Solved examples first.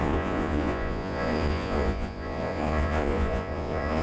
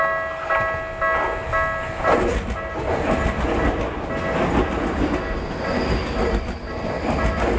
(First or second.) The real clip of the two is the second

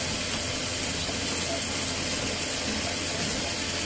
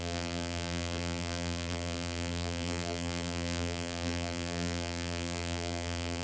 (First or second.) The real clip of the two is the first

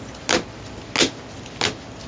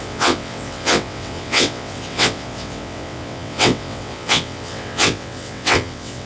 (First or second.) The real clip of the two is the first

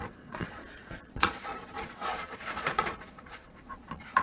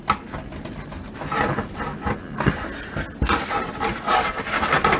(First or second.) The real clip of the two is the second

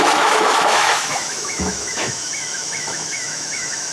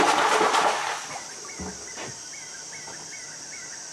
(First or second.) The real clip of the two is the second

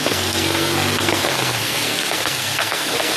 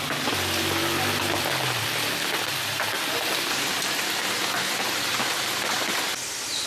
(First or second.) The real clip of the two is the second